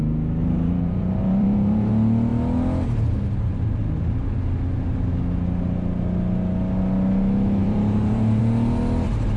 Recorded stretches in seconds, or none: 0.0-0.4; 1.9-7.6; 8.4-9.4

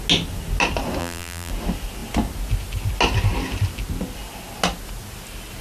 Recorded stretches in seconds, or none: 0.0-1.0; 1.5-5.6

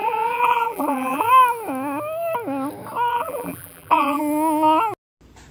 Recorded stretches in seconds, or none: 1.3-3.1; 4.2-5.5

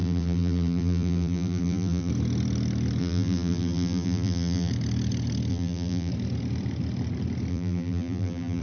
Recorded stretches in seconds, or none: 2.1-3.0; 4.7-5.5; 6.1-7.5